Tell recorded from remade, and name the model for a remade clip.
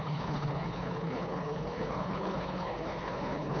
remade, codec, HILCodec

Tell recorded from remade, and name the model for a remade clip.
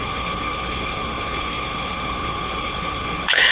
remade, codec, HILCodec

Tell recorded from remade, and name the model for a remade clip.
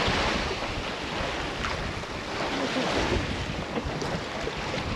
recorded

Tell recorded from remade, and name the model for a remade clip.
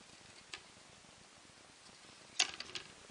recorded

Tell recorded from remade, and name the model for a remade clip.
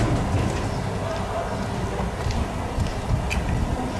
recorded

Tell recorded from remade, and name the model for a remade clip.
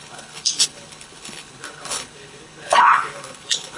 remade, codec, HILCodec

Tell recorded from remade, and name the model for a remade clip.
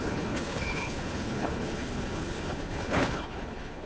remade, codec, HILCodec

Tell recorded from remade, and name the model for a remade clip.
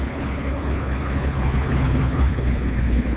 remade, codec, HILCodec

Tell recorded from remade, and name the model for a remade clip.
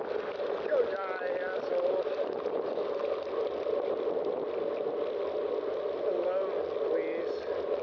recorded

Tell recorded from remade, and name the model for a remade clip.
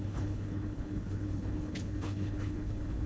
remade, codec, HILCodec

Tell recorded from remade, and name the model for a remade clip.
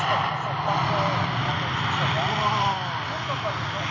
recorded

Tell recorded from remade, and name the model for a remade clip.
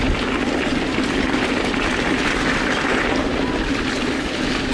recorded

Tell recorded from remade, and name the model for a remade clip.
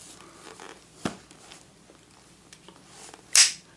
recorded